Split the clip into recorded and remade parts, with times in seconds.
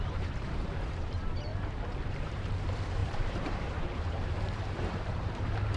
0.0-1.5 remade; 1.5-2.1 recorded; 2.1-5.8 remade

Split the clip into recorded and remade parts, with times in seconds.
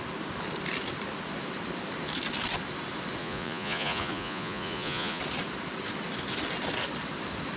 0.0-3.2 recorded; 3.2-5.2 remade; 5.2-7.6 recorded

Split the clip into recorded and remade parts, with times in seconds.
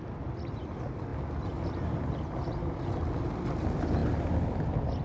0.0-4.0 recorded; 4.0-5.0 remade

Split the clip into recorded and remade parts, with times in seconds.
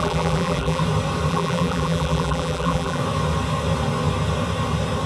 0.0-0.8 remade; 0.8-1.3 recorded; 1.3-3.0 remade; 3.0-5.1 recorded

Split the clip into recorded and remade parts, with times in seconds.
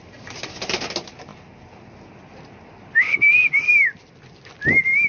0.0-5.1 recorded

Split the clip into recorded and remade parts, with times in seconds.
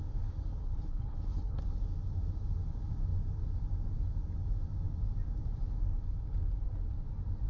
0.0-0.6 recorded; 0.6-1.6 remade; 1.6-7.5 recorded